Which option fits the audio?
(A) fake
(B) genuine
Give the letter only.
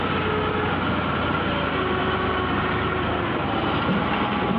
B